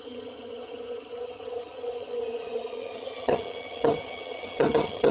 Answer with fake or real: fake